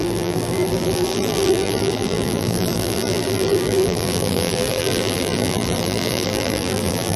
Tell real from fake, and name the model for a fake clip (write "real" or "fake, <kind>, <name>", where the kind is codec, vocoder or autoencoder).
fake, vocoder, BigVGAN v2